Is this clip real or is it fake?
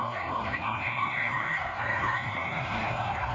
fake